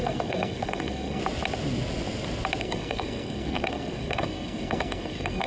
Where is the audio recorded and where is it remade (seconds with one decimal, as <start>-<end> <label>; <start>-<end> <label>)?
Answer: 0.0-1.2 remade; 1.2-2.6 recorded; 2.6-5.5 remade